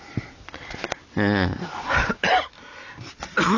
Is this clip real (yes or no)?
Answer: yes